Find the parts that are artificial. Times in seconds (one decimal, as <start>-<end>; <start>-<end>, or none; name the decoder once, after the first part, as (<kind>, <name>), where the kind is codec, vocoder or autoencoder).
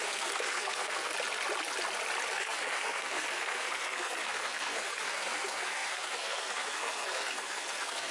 0.0-1.1 (codec, SNAC); 2.3-8.1